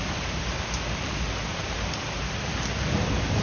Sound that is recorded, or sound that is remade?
recorded